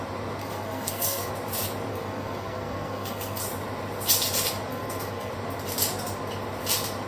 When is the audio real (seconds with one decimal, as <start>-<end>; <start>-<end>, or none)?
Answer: 0.0-0.4; 1.3-1.9; 3.4-4.7; 5.3-7.1